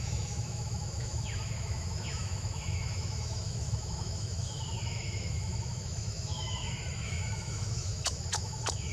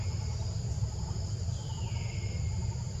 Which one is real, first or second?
second